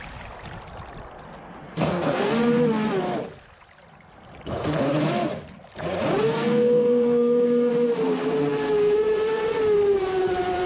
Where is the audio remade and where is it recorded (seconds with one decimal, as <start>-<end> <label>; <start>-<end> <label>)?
0.0-1.6 recorded; 1.6-2.3 remade; 2.3-6.3 recorded; 6.3-7.7 remade; 7.7-10.7 recorded